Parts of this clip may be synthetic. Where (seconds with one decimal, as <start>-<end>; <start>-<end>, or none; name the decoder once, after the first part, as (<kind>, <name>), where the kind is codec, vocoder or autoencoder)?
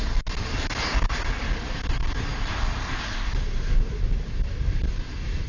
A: none